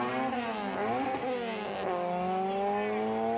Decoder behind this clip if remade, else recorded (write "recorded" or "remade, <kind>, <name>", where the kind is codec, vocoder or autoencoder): recorded